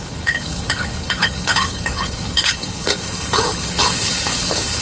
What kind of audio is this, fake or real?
fake